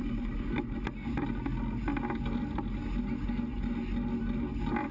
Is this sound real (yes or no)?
yes